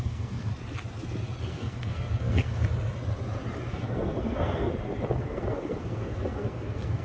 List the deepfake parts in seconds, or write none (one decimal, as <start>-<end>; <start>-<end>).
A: 0.0-0.5; 1.4-2.6; 3.7-4.7; 5.2-7.0